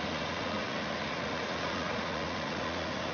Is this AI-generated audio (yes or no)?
yes